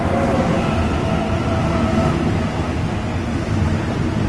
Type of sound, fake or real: real